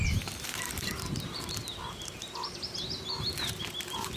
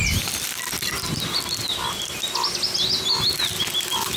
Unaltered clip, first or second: second